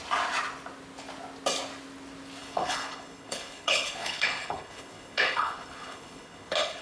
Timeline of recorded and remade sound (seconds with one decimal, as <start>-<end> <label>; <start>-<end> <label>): 0.0-2.4 recorded; 2.4-6.8 remade